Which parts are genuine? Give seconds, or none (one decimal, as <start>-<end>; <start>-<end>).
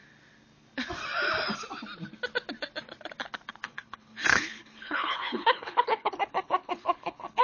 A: 0.0-3.6